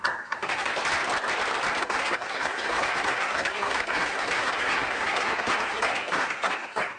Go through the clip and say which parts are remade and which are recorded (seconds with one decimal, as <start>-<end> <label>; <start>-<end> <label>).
0.0-0.7 remade; 0.7-1.8 recorded; 1.8-7.0 remade